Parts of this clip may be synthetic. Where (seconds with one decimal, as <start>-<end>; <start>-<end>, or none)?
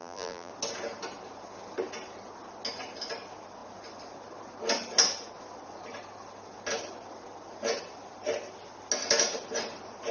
0.0-0.5